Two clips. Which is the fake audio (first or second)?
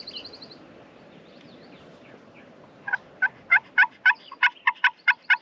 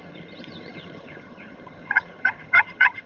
second